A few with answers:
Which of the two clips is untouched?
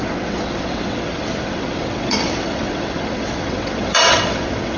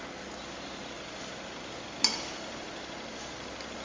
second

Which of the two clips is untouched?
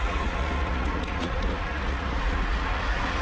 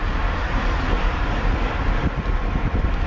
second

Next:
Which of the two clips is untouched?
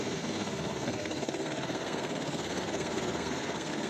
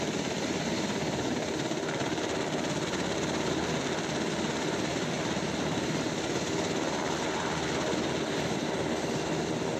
second